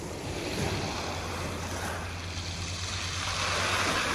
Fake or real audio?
real